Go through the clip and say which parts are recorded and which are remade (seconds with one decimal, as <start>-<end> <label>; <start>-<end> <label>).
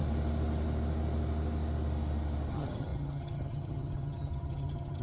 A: 0.0-2.5 recorded; 2.5-5.0 remade